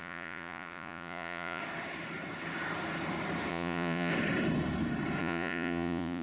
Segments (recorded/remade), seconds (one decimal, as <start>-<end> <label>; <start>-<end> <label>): 0.0-1.6 remade; 1.6-3.5 recorded; 3.5-4.1 remade; 4.1-5.2 recorded; 5.2-6.2 remade